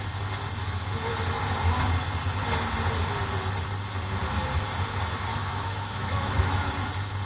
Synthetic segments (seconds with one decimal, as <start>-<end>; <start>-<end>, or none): 0.6-1.1; 5.3-6.7

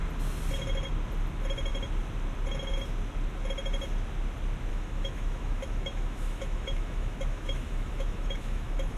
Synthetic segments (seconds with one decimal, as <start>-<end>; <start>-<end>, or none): 4.7-9.0

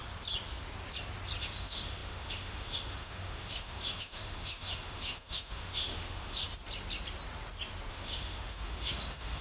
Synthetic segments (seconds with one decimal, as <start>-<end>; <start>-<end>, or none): 1.4-6.4; 7.9-9.4

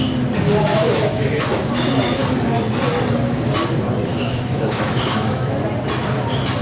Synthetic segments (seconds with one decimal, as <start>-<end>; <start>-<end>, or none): 0.7-1.7; 4.1-5.6

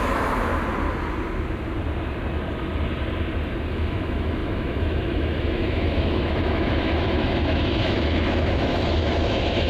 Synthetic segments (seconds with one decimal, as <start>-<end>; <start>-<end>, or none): 0.0-0.5; 3.7-9.7